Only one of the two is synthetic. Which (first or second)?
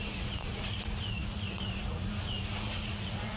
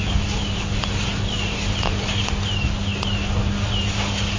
first